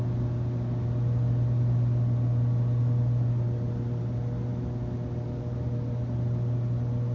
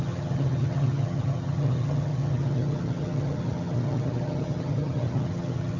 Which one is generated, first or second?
second